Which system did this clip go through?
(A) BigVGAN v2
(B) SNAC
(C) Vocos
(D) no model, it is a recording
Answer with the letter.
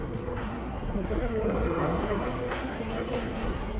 B